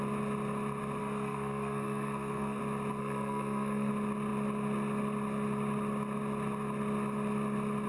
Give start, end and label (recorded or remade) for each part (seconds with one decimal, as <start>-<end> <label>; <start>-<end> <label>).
0.0-1.0 recorded; 1.0-2.6 remade; 2.6-3.0 recorded; 3.0-3.9 remade; 3.9-7.9 recorded